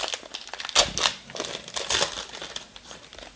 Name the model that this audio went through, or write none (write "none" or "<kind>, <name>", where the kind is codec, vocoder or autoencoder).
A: none